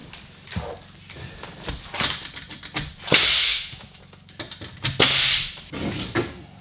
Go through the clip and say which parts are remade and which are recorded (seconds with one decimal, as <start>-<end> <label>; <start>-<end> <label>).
0.0-3.4 recorded; 3.4-4.0 remade; 4.0-6.6 recorded